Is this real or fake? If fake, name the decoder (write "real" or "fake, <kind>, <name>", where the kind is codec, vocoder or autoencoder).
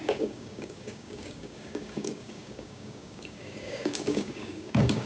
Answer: fake, codec, DAC